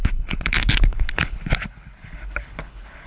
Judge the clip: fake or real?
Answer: fake